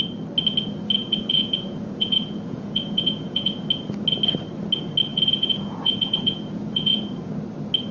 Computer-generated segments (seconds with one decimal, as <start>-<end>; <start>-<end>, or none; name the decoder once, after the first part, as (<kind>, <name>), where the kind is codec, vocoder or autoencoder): 1.0-3.6 (vocoder, Vocos); 5.1-7.3